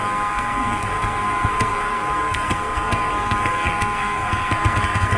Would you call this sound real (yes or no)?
no